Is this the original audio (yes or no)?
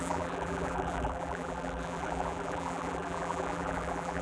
no